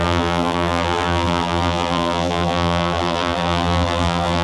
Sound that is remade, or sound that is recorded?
remade